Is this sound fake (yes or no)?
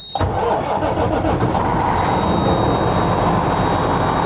no